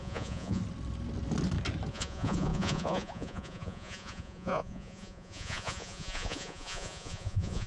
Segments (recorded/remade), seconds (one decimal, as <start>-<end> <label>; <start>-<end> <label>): 0.0-0.6 remade; 0.6-1.9 recorded; 1.9-7.7 remade